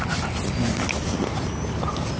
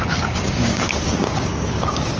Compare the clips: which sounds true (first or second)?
first